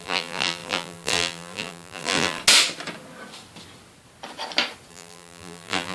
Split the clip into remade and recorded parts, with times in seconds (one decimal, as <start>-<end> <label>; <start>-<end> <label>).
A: 0.0-2.4 remade; 2.4-4.9 recorded; 4.9-5.9 remade